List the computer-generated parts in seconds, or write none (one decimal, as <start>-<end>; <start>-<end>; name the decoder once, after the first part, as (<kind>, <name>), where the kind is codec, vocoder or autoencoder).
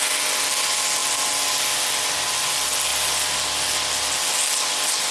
none